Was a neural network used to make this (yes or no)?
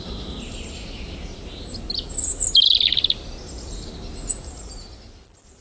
no